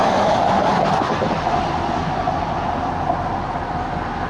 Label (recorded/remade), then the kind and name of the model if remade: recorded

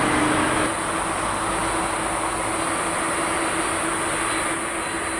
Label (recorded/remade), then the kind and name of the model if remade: recorded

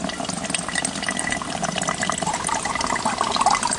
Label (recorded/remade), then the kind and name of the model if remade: recorded